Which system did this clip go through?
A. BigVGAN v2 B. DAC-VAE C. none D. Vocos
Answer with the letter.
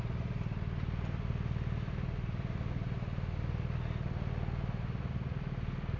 C